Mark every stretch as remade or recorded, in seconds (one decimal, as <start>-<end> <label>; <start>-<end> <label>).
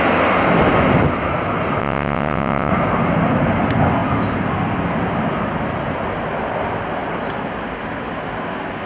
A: 0.0-1.8 recorded; 1.8-2.7 remade; 2.7-8.9 recorded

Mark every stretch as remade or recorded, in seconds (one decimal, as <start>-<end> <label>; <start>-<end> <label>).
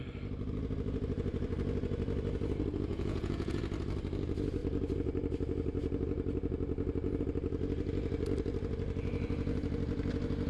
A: 0.0-2.9 recorded; 2.9-3.6 remade; 3.6-10.5 recorded